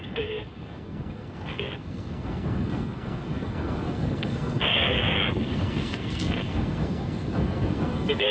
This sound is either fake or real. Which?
fake